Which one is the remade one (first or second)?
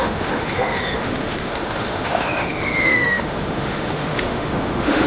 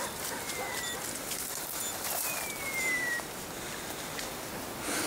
first